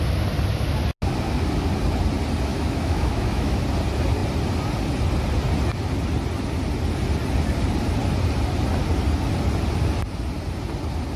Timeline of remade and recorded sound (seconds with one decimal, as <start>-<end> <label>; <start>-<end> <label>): 0.0-2.5 recorded; 2.5-3.6 remade; 3.6-11.2 recorded